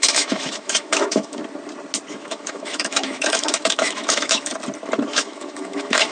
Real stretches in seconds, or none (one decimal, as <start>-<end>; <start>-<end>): 1.4-2.1; 4.5-5.1